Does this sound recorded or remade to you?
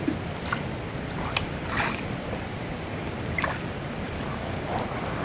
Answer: recorded